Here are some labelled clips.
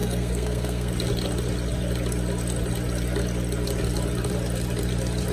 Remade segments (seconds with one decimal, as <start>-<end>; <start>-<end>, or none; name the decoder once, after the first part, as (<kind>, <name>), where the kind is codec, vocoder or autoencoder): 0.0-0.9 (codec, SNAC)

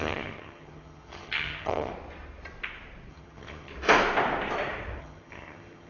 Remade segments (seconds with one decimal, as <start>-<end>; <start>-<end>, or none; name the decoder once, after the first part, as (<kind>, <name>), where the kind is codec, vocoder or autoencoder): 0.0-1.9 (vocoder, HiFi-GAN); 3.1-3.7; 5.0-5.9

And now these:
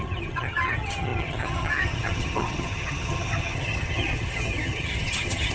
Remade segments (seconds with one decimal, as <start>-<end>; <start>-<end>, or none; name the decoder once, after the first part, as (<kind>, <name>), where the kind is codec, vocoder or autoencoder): 0.0-5.5 (vocoder, HiFi-GAN)

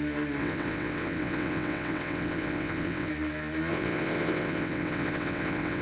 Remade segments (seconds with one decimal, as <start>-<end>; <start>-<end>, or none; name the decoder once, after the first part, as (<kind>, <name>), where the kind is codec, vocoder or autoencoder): 0.4-3.1 (vocoder, WaveNeXt); 3.7-5.8

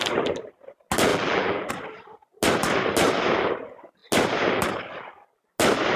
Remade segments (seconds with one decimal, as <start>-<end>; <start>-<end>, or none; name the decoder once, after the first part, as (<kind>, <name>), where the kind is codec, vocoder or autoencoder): 1.1-1.7 (vocoder, BigVGAN v2)

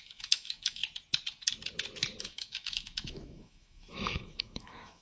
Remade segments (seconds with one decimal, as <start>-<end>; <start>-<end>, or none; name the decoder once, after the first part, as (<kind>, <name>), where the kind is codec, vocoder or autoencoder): 0.0-0.8 (autoencoder, DAC-VAE); 2.2-5.0

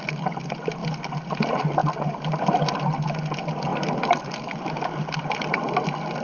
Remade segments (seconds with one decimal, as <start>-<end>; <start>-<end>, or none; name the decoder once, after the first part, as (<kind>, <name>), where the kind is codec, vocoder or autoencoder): none